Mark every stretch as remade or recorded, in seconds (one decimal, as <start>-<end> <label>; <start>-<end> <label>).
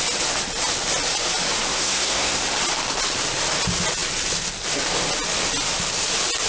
0.0-1.7 recorded; 1.7-2.4 remade; 2.4-6.5 recorded